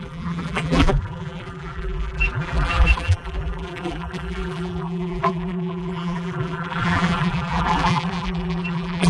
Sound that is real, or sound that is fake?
fake